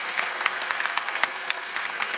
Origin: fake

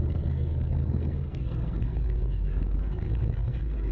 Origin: fake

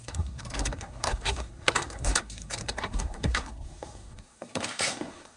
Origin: fake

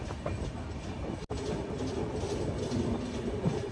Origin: real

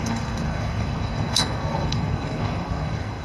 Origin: fake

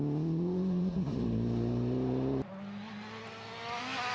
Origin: real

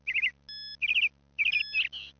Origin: real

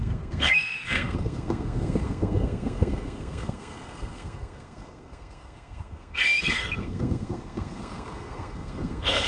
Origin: fake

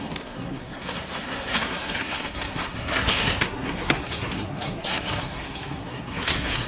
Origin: fake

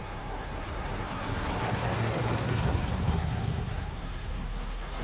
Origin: fake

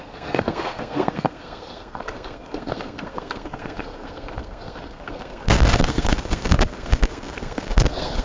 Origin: fake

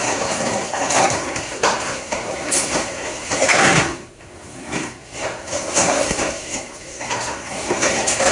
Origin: fake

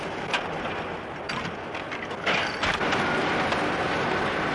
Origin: real